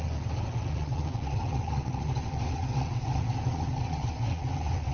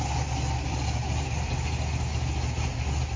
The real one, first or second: second